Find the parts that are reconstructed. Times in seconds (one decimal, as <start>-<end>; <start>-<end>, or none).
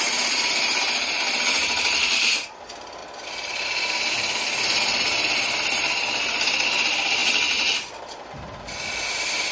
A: 0.0-7.2; 8.0-9.5